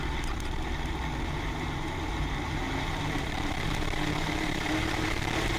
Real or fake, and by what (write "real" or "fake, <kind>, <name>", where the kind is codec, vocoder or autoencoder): fake, vocoder, BigVGAN v2